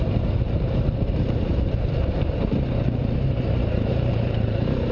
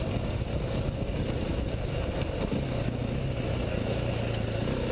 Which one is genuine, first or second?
second